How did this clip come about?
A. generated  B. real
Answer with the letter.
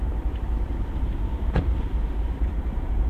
A